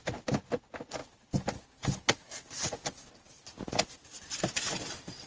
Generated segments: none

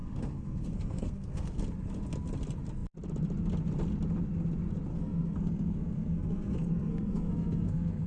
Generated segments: 0.0-1.6 (codec, SNAC); 4.9-8.1

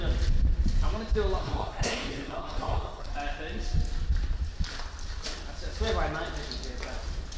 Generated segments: 1.4-3.1 (codec, SNAC)

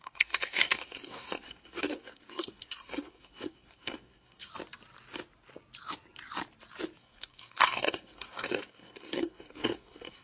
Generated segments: 0.0-4.5 (codec, SNAC); 7.0-10.2

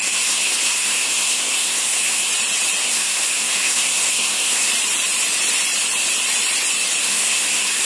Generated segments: 0.0-2.3 (codec, SNAC); 2.8-4.7; 7.0-7.8

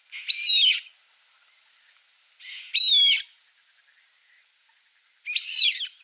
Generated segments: none

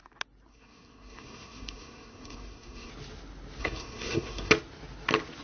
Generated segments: 0.5-2.9 (codec, SNAC); 3.6-4.5